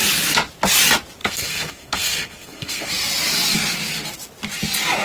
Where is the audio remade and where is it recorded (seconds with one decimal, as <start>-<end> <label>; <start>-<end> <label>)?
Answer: 0.0-1.2 recorded; 1.2-2.9 remade; 2.9-5.0 recorded